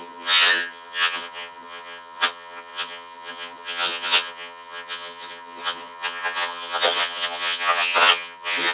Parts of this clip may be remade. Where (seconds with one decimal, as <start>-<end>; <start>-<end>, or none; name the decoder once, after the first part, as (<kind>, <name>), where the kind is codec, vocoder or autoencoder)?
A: 0.0-8.7 (vocoder, HiFi-GAN)